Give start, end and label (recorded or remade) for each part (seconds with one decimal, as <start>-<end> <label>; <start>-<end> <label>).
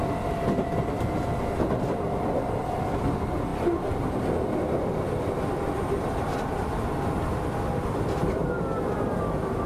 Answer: 0.0-9.7 recorded